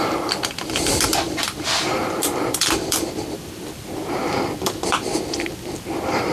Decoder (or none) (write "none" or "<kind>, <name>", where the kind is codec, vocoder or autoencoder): vocoder, BigVGAN v2